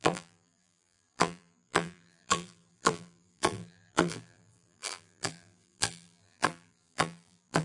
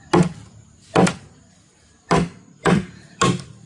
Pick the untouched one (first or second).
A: second